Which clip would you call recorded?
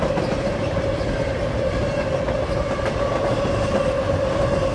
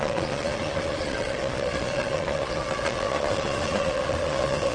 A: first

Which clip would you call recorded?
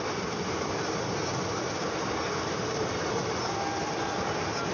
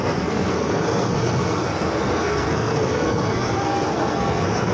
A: first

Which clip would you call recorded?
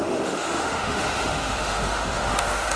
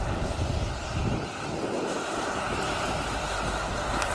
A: second